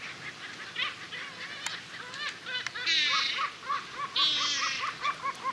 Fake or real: real